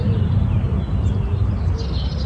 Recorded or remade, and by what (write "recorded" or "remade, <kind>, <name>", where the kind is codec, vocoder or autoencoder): recorded